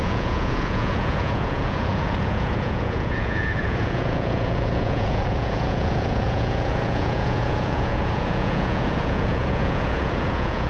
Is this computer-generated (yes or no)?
yes